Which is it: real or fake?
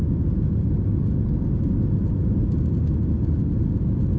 real